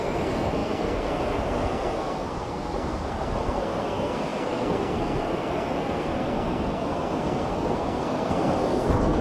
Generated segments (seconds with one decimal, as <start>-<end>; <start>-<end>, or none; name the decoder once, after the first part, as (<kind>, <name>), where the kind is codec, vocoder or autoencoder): 0.0-9.2 (codec, SNAC)